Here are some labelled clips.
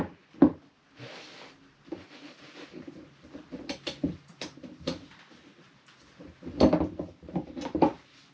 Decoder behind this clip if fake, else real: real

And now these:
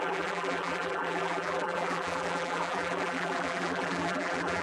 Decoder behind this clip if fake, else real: fake, vocoder, BigVGAN v2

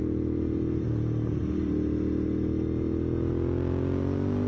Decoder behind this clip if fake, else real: real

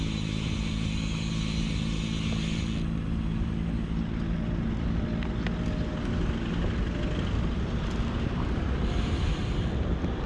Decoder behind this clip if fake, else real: real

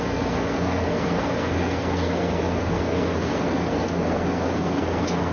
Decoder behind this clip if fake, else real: fake, codec, SNAC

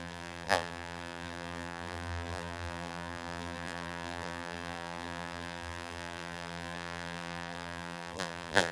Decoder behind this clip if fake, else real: fake, vocoder, BigVGAN v2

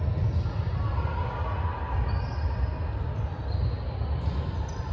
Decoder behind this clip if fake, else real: real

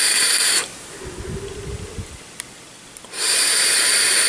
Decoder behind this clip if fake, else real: real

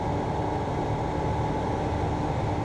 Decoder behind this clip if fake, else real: real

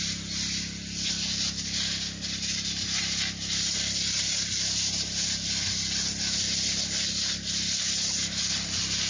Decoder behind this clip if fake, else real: real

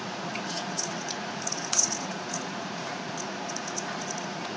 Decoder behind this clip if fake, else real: fake, vocoder, Vocos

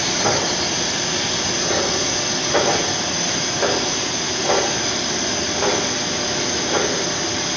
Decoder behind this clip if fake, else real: real